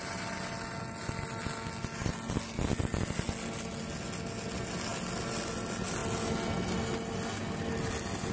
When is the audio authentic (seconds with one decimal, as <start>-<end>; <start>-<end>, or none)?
0.0-8.3